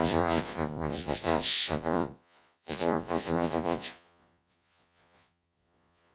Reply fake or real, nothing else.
fake